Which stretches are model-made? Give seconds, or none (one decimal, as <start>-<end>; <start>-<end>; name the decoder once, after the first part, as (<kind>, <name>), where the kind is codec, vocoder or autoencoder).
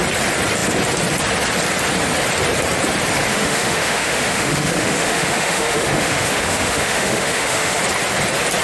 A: 3.3-7.8 (autoencoder, DAC-VAE)